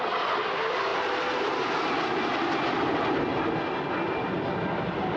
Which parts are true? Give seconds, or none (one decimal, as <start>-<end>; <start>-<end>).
0.0-5.2